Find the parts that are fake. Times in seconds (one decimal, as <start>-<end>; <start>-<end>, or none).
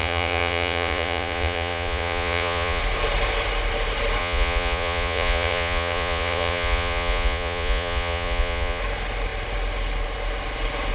0.0-2.8; 4.2-8.8